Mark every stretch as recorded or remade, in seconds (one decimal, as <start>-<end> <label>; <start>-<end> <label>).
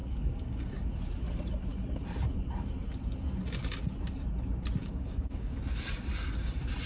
0.0-0.7 remade; 0.7-4.8 recorded; 4.8-5.6 remade; 5.6-6.9 recorded